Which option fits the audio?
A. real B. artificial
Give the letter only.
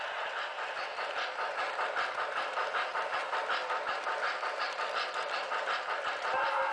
A